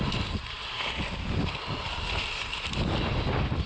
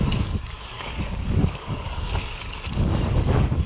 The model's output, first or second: second